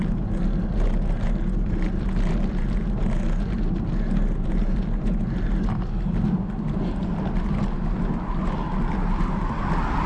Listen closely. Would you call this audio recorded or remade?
recorded